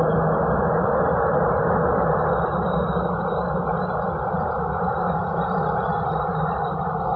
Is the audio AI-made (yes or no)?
no